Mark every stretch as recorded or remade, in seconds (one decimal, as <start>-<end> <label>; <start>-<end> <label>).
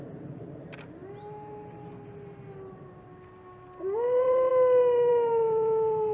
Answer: 0.0-4.5 remade; 4.5-5.1 recorded; 5.1-6.1 remade